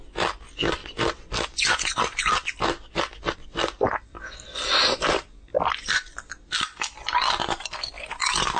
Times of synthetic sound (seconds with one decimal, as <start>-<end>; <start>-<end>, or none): none